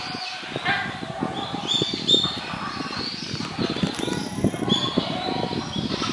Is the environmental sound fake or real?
real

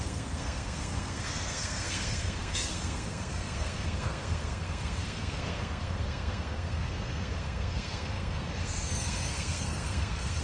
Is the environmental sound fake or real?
fake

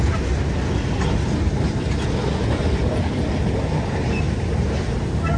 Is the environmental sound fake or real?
real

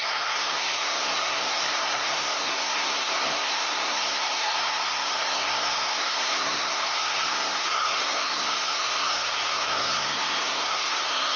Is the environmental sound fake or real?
fake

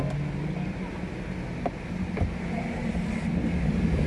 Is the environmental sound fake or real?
real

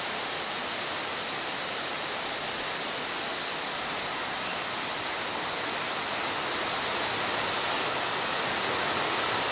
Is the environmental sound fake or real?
real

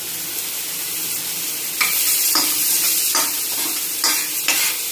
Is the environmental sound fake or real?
real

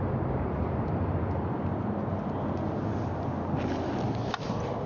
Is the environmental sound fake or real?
real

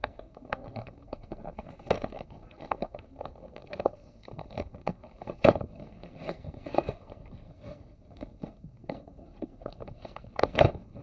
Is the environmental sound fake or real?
fake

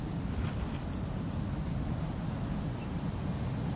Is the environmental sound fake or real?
real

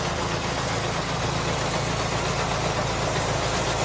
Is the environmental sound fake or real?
real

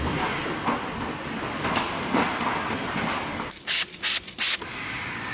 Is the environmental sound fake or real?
real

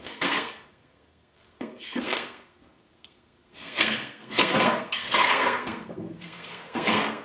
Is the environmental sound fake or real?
fake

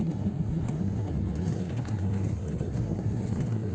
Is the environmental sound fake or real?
fake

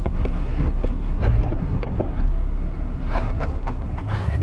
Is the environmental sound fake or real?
fake